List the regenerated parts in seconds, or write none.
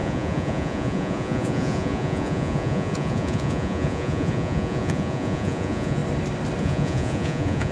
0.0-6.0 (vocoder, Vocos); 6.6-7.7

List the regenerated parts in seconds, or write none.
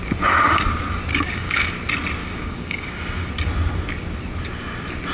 1.1-1.7 (codec, DAC); 2.2-3.3